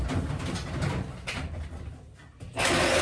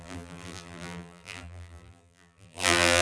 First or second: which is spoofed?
second